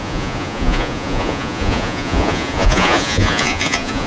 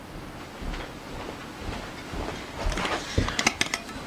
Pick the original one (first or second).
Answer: second